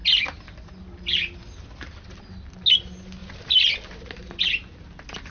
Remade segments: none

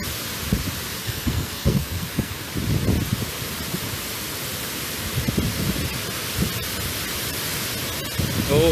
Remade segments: 1.0-2.5 (codec, SNAC)

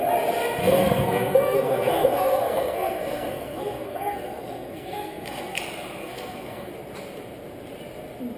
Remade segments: 0.6-5.6 (codec, SNAC); 6.0-6.7

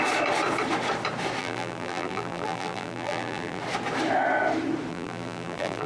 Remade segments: 1.4-3.6 (vocoder, BigVGAN v2); 4.9-5.9